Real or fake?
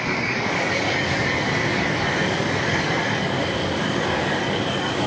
fake